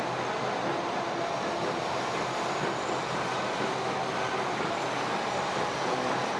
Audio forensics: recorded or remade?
recorded